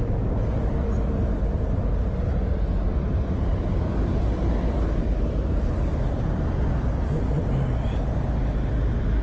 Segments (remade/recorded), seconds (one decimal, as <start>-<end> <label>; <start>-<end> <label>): 0.0-2.9 recorded; 2.9-4.5 remade; 4.5-5.0 recorded; 5.0-6.4 remade; 6.4-9.2 recorded